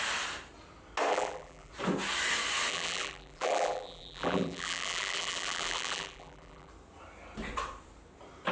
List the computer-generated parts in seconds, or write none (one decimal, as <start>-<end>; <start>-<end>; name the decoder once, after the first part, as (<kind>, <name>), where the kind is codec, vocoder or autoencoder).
1.1-1.7 (vocoder, BigVGAN v2); 2.7-6.7